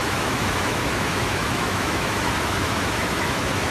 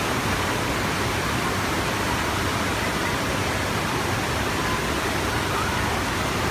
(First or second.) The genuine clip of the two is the second